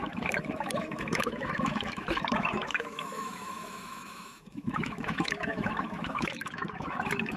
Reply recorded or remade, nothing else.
remade